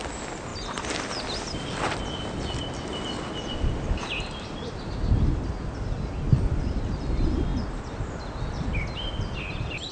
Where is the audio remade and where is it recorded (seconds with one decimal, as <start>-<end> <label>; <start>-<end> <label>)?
0.0-9.9 recorded